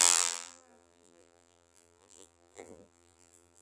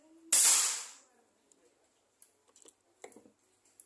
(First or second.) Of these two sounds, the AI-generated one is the first